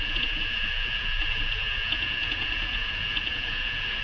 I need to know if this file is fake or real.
fake